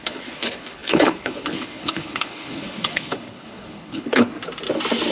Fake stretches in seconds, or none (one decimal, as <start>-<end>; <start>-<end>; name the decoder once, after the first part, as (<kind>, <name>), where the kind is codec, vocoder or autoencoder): 0.0-4.3 (codec, HILCodec)